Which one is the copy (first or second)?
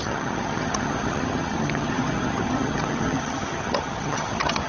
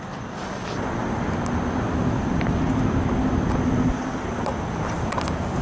first